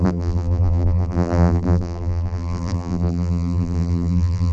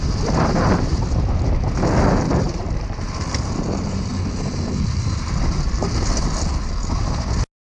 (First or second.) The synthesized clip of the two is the first